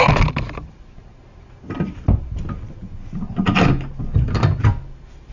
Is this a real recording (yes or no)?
yes